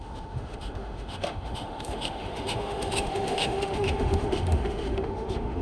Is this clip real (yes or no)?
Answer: no